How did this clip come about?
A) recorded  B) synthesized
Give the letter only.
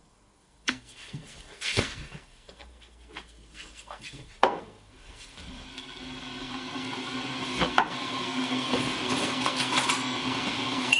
B